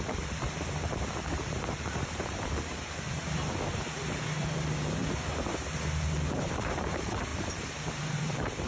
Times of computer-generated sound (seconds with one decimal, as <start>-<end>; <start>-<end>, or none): 0.0-3.2; 4.4-5.0; 5.9-8.7